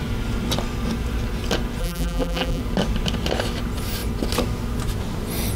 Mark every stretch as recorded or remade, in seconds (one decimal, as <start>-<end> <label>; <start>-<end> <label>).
0.0-1.8 recorded; 1.8-2.6 remade; 2.6-5.6 recorded